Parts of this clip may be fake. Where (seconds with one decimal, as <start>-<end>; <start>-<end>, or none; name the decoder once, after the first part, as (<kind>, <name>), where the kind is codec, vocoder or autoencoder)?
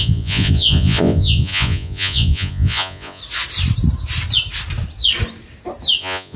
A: 0.0-3.2 (vocoder, Vocos); 6.0-6.4